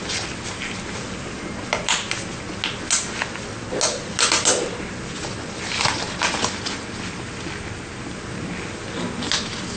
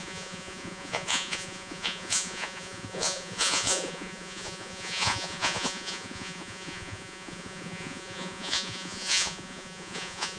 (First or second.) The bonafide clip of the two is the first